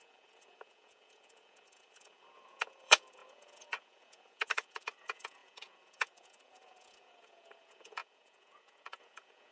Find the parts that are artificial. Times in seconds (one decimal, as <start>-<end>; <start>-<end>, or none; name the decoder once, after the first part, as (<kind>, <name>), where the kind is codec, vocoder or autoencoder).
0.0-9.5 (vocoder, Vocos)